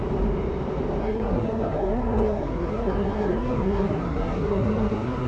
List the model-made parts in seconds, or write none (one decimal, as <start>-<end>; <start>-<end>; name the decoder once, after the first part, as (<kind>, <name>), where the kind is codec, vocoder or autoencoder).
1.0-5.3 (codec, SNAC)